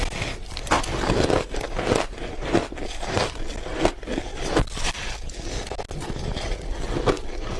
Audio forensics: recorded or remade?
recorded